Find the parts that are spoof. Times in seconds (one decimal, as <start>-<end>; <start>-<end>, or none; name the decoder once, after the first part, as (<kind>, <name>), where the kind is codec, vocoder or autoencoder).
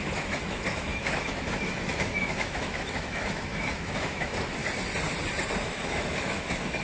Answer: 0.0-4.6 (autoencoder, DAC-VAE); 5.6-6.8